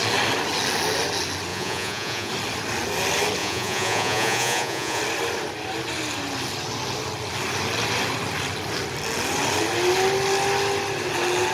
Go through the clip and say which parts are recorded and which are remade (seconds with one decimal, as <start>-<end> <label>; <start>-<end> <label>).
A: 0.0-1.5 recorded; 1.5-2.3 remade; 2.3-3.4 recorded; 3.4-5.0 remade; 5.0-11.5 recorded